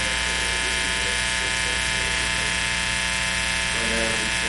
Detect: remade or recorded recorded